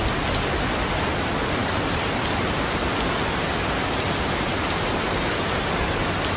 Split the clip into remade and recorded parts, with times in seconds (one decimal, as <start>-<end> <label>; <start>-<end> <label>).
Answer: 0.0-6.4 recorded

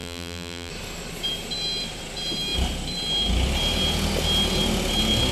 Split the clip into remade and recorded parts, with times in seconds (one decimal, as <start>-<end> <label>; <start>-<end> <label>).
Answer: 0.0-0.7 remade; 0.7-5.3 recorded

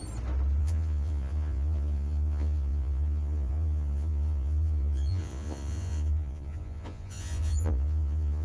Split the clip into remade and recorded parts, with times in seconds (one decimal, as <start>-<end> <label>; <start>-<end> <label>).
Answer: 0.0-0.6 recorded; 0.6-8.4 remade

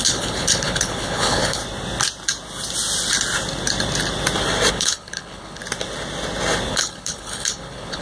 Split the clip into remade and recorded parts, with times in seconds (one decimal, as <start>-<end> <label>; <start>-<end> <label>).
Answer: 0.0-1.6 remade; 1.6-4.7 recorded; 4.7-5.6 remade; 5.6-6.7 recorded; 6.7-8.0 remade

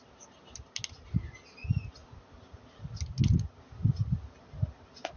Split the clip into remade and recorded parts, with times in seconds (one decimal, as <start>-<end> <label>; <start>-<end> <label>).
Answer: 0.0-5.2 recorded

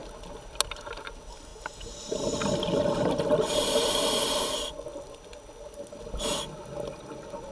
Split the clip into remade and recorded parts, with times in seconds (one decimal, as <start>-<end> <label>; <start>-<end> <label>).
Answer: 0.0-7.5 recorded

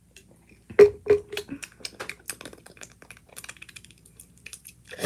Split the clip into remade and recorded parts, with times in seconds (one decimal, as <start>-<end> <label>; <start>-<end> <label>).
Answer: 0.0-2.5 recorded; 2.5-5.1 remade

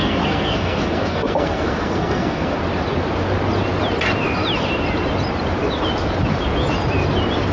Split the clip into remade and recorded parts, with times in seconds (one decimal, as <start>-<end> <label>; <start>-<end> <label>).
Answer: 0.0-2.6 remade; 2.6-7.5 recorded